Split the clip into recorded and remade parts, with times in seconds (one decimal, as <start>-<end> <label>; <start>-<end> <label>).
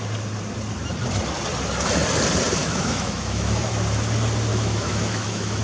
0.0-2.6 recorded; 2.6-3.8 remade; 3.8-4.5 recorded; 4.5-5.6 remade